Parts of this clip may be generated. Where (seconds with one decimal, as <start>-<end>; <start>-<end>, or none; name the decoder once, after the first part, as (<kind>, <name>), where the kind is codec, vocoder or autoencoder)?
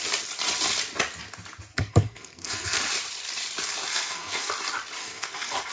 1.7-2.8 (codec, SNAC); 3.9-4.5; 5.0-5.7